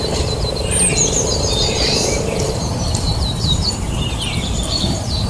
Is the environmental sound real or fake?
fake